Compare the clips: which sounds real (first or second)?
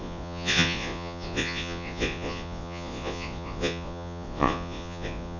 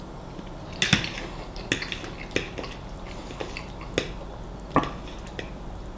second